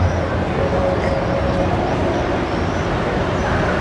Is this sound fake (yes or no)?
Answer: no